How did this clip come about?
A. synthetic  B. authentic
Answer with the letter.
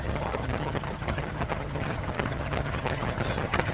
A